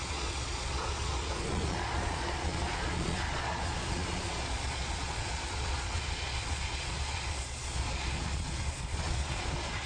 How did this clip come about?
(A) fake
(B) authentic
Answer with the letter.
A